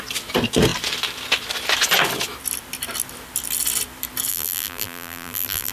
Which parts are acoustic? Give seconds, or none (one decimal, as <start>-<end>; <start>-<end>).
0.0-4.3